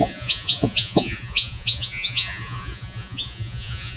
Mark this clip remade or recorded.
remade